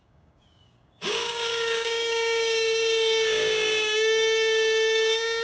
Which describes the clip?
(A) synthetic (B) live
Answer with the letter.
A